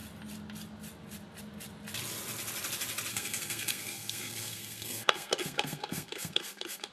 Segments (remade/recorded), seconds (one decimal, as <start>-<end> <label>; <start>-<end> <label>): 0.0-3.1 recorded; 3.1-6.9 remade